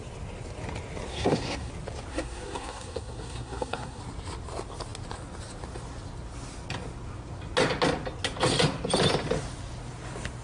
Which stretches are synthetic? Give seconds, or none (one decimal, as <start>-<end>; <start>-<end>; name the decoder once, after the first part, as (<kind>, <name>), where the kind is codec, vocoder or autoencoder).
1.1-1.7 (codec, SNAC); 2.1-4.0